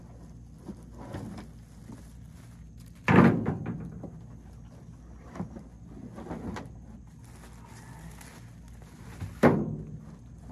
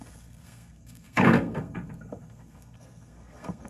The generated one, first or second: second